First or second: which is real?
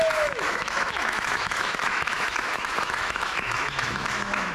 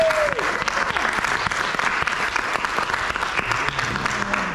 second